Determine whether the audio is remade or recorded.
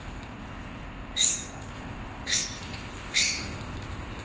remade